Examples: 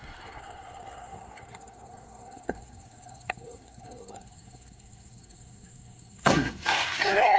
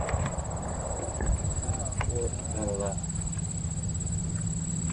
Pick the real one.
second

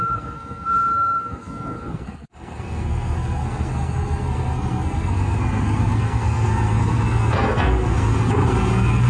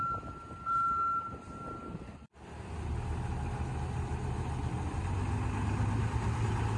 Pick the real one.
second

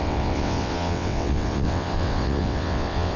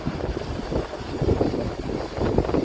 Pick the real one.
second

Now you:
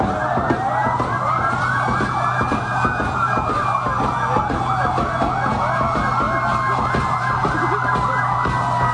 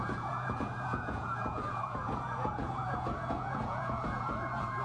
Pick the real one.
first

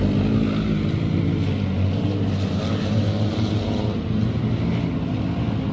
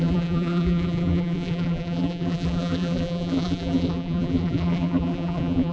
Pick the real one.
first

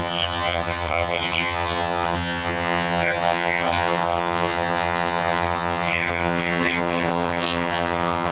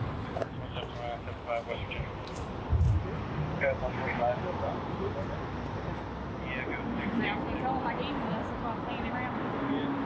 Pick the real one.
second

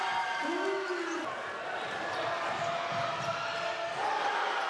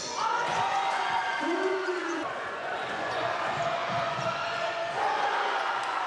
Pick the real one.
first